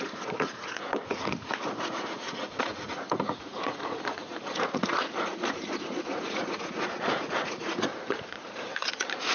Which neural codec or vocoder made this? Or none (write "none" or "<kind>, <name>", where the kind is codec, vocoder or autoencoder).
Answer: vocoder, Vocos